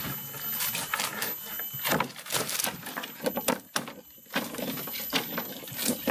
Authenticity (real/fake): real